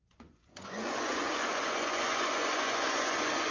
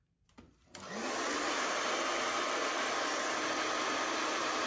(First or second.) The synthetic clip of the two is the first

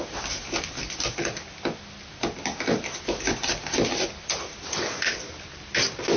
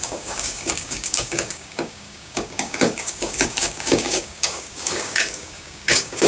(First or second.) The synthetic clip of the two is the second